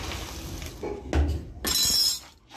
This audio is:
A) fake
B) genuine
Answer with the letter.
B